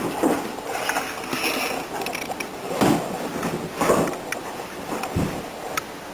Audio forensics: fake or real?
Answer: real